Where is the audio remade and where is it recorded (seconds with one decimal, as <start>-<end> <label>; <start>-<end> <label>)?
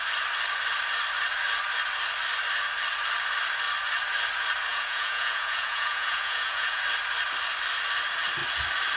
0.0-4.7 recorded; 4.7-6.8 remade; 6.8-9.0 recorded